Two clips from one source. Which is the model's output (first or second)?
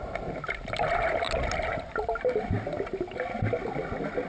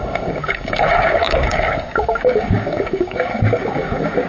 second